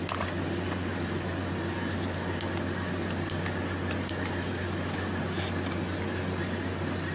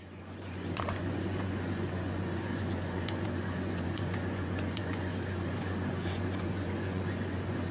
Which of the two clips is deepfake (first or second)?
second